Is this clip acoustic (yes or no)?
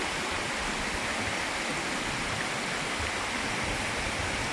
yes